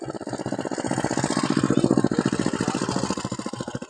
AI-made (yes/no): no